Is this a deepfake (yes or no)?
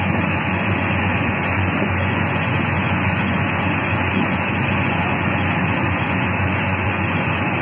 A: yes